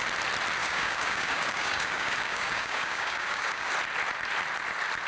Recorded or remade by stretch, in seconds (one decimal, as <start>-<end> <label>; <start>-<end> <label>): 0.0-0.6 recorded; 0.6-3.7 remade; 3.7-5.1 recorded